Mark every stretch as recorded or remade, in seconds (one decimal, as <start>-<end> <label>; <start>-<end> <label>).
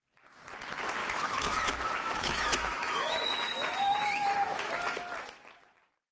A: 0.0-1.0 recorded; 1.0-4.7 remade; 4.7-6.1 recorded